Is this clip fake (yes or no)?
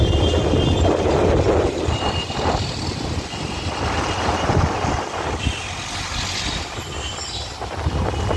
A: no